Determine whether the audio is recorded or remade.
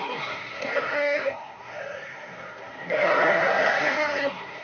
remade